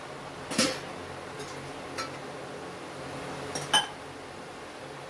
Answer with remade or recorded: recorded